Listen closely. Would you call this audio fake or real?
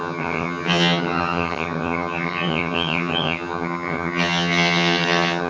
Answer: fake